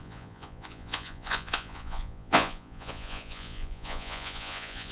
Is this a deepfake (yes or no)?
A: yes